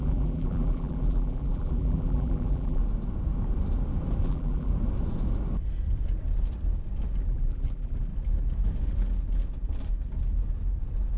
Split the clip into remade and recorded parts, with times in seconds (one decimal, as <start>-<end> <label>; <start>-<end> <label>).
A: 0.0-2.8 remade; 2.8-4.2 recorded; 4.2-4.7 remade; 4.7-7.2 recorded; 7.2-8.1 remade; 8.1-11.2 recorded